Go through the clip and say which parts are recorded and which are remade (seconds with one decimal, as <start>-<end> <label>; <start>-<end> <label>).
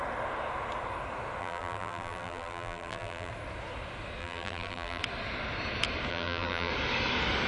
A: 0.0-1.4 recorded; 1.4-3.3 remade; 3.3-4.2 recorded; 4.2-5.0 remade; 5.0-6.1 recorded; 6.1-6.7 remade; 6.7-7.5 recorded